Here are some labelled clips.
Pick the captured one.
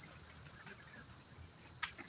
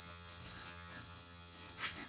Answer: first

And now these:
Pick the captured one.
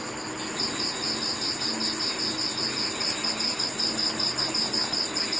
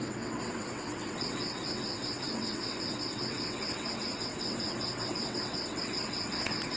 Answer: first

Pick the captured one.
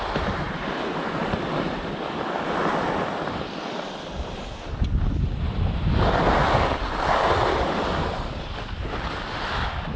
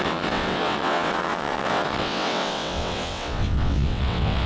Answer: first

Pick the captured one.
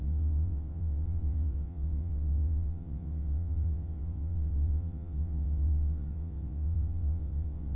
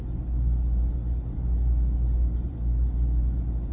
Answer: second